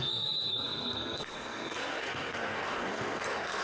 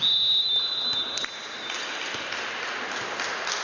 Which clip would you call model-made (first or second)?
first